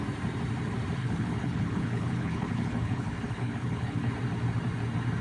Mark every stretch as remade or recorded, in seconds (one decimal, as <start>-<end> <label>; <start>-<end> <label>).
0.0-1.0 recorded; 1.0-4.1 remade; 4.1-5.2 recorded